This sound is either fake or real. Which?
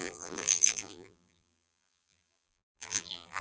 fake